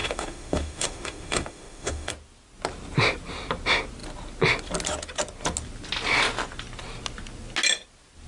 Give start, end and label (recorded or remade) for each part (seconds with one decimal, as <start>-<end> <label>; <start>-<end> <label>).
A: 0.0-2.1 remade; 2.1-8.3 recorded

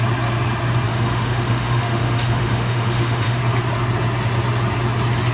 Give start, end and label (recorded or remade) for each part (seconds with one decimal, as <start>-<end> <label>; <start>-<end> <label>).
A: 0.0-0.9 recorded; 0.9-3.4 remade; 3.4-5.3 recorded

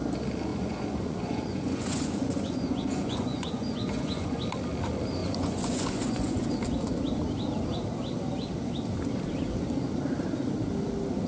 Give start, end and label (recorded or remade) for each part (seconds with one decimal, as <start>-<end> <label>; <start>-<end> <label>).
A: 0.0-0.5 recorded; 0.5-4.4 remade; 4.4-5.2 recorded; 5.2-6.5 remade; 6.5-11.3 recorded

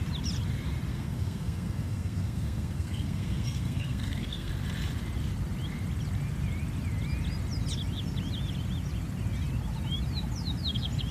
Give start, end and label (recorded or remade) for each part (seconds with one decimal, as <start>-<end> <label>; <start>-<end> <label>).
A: 0.0-0.9 recorded; 0.9-4.5 remade; 4.5-11.1 recorded

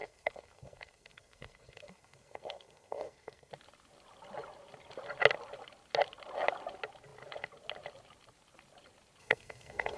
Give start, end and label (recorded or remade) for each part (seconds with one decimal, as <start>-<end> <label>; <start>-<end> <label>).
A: 0.0-3.5 remade; 3.5-9.2 recorded; 9.2-10.0 remade

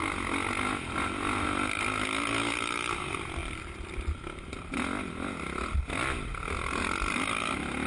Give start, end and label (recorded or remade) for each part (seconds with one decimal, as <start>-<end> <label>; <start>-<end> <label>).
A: 0.0-3.4 recorded; 3.4-3.9 remade; 3.9-7.9 recorded

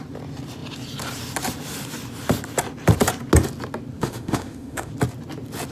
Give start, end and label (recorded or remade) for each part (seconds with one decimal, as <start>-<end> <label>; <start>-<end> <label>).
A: 0.0-4.0 recorded; 4.0-4.9 remade; 4.9-5.7 recorded